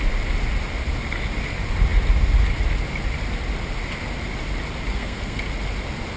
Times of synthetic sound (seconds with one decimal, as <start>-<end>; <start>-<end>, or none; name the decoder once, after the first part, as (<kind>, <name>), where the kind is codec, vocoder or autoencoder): 4.9-5.4 (codec, SNAC)